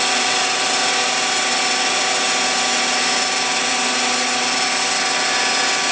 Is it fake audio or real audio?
real